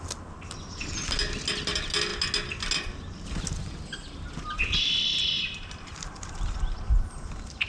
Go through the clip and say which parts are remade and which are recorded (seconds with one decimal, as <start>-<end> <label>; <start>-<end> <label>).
0.0-7.7 recorded